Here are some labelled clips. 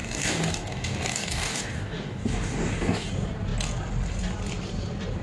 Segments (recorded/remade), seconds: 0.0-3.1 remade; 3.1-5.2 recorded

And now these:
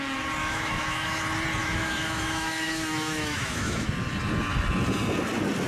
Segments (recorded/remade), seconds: 0.0-0.4 recorded; 0.4-1.2 remade; 1.2-1.6 recorded; 1.6-3.9 remade; 3.9-5.7 recorded

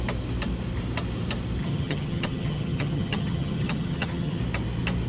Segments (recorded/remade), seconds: 0.0-1.6 recorded; 1.6-4.4 remade; 4.4-5.1 recorded

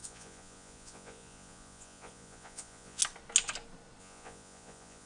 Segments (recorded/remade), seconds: 0.0-3.0 remade; 3.0-4.0 recorded; 4.0-5.1 remade